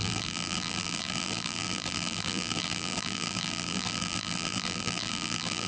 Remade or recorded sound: remade